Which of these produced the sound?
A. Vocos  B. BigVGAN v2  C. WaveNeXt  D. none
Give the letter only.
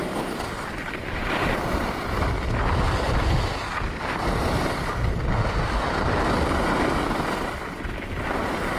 D